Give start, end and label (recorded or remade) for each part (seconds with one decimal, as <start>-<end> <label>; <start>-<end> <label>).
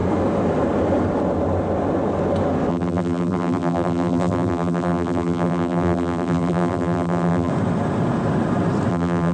0.0-2.7 recorded; 2.7-7.5 remade; 7.5-8.9 recorded; 8.9-9.3 remade